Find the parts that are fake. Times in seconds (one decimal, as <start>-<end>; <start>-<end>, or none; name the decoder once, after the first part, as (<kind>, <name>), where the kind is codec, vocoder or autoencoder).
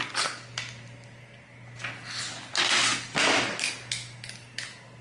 none